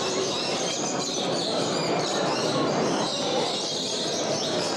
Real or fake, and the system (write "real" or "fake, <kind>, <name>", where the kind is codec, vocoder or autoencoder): fake, vocoder, BigVGAN v2